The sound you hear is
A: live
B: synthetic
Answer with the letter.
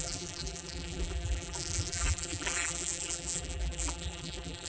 B